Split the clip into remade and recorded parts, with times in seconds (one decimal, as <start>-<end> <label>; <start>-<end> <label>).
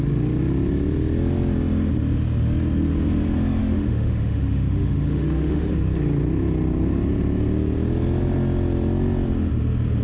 0.0-3.6 recorded; 3.6-5.7 remade; 5.7-10.0 recorded